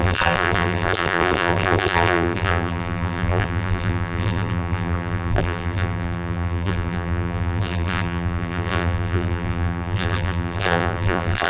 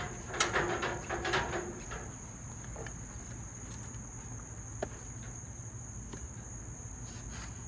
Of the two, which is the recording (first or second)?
second